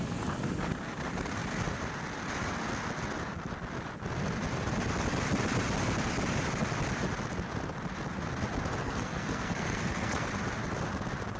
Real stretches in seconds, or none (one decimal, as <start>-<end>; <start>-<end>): 0.0-8.8; 10.3-11.4